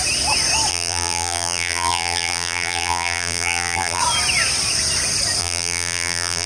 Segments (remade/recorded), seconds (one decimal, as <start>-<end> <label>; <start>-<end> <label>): 0.0-0.7 recorded; 0.7-4.0 remade; 4.0-5.4 recorded; 5.4-6.5 remade